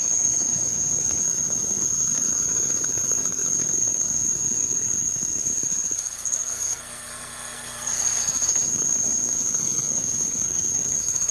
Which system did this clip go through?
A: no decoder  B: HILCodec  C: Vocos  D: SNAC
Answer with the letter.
D